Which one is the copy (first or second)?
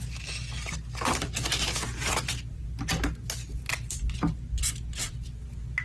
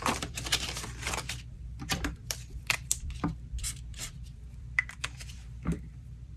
second